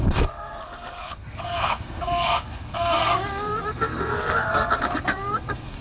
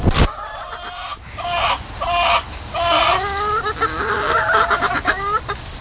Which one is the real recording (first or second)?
second